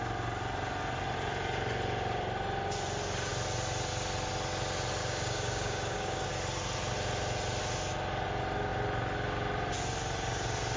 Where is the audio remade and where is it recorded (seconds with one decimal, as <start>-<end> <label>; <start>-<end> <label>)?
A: 0.0-5.0 recorded; 5.0-6.3 remade; 6.3-10.8 recorded